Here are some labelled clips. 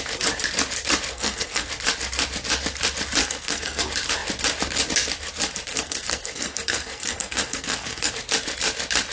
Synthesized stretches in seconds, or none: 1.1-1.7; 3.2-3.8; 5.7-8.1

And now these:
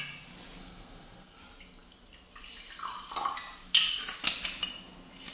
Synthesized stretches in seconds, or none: 0.6-1.4

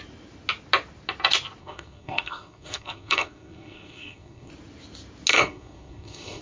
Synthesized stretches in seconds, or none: 1.6-4.5; 5.3-6.4

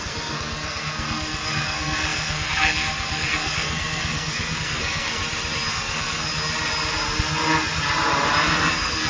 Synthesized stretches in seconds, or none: 0.0-5.2; 5.7-6.3; 8.7-9.1

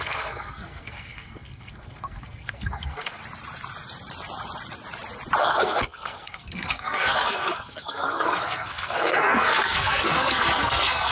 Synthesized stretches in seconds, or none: 0.0-3.2; 5.4-11.1